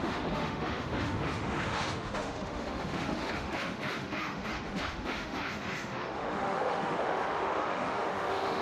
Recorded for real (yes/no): no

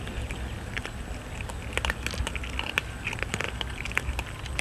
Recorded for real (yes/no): yes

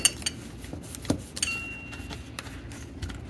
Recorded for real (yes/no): yes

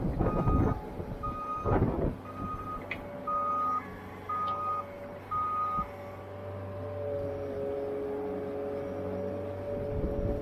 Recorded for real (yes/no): yes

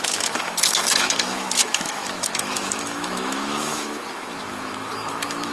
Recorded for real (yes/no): no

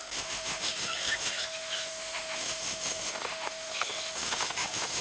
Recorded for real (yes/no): no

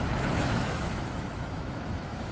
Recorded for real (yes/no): no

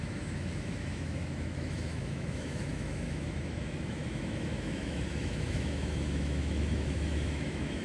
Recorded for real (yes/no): no